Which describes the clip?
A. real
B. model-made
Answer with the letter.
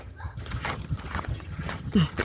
B